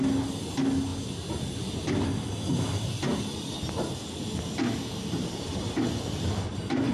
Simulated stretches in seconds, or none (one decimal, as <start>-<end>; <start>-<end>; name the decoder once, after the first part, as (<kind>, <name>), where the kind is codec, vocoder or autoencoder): none